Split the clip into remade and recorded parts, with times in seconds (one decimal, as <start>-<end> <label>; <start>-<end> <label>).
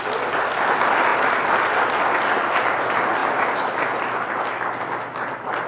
0.0-1.1 recorded; 1.1-2.1 remade; 2.1-5.7 recorded